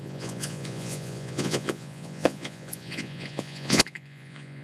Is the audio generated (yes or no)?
yes